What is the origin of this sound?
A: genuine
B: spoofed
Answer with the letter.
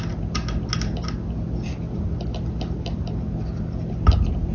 A